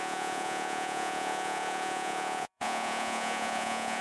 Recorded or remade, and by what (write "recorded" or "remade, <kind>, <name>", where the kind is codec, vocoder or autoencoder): remade, vocoder, Vocos